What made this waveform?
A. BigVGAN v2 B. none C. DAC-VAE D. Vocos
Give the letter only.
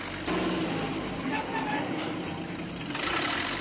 B